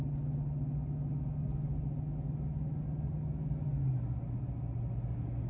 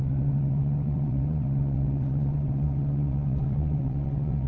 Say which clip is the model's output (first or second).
second